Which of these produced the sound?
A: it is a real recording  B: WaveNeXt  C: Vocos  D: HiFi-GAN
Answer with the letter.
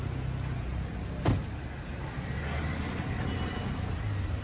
A